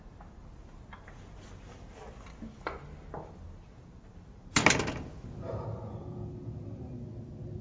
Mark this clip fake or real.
real